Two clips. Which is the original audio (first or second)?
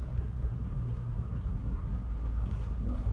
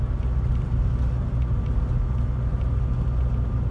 second